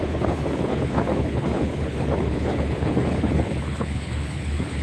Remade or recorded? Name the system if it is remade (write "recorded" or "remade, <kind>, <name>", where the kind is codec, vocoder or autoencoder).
remade, codec, HILCodec